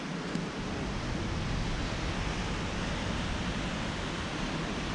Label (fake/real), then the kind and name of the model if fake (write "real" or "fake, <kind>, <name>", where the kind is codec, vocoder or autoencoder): real